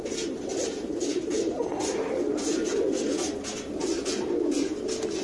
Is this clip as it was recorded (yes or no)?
yes